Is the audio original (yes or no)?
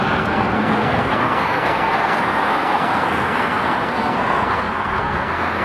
no